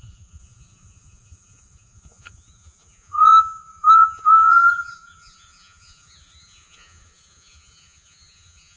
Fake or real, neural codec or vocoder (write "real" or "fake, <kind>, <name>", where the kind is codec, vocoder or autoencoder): fake, vocoder, Vocos